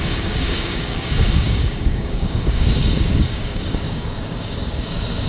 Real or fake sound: fake